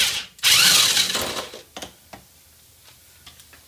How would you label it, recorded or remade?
recorded